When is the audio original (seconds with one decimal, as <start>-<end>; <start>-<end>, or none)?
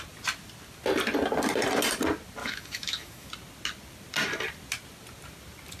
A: 0.0-2.4; 3.3-5.8